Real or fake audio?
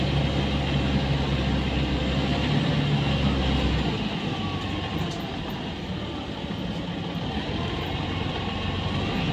real